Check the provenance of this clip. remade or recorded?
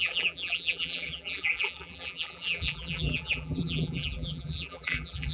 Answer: remade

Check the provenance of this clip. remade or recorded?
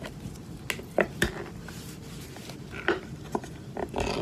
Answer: recorded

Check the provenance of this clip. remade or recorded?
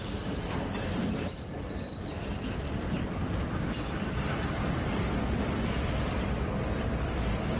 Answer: remade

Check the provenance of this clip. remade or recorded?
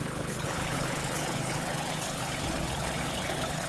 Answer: remade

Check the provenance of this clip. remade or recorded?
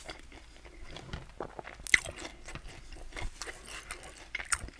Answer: recorded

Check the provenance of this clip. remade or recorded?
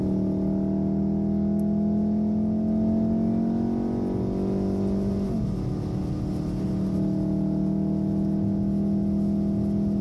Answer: recorded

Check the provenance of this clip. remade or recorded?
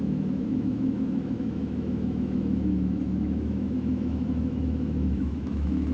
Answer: remade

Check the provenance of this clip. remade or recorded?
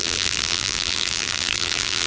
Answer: remade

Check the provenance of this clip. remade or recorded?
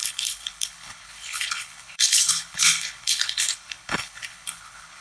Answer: remade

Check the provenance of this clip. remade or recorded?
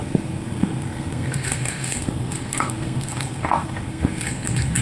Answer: remade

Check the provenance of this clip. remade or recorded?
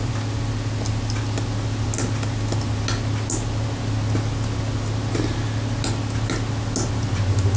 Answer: recorded